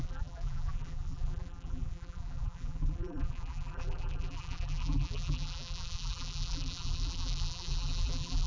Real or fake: fake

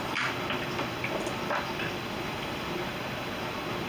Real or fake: real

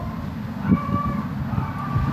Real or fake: real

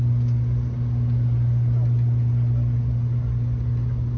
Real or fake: real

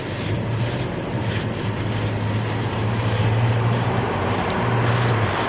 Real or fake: fake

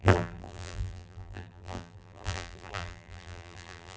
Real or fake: fake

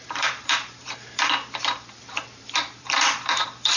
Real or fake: fake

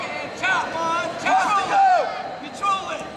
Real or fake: fake